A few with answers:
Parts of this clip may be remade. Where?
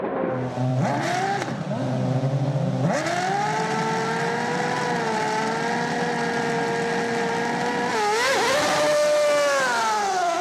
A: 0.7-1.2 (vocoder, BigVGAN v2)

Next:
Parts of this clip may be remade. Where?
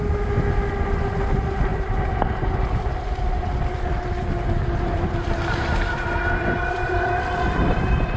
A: 1.7-5.3 (vocoder, BigVGAN v2); 6.4-8.2